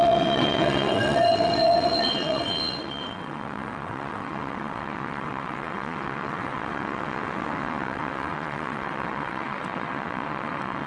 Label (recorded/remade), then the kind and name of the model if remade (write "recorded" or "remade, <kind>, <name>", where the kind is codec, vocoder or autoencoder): remade, vocoder, WaveNeXt